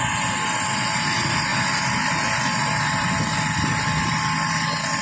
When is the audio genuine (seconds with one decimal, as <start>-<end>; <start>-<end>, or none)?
0.0-5.0